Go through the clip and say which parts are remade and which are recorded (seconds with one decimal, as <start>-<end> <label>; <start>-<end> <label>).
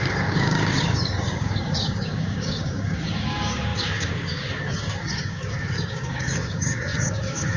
0.0-7.6 remade